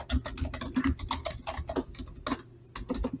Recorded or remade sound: recorded